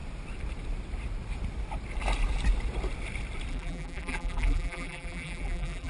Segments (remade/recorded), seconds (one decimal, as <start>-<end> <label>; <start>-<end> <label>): 0.0-3.5 recorded; 3.5-5.9 remade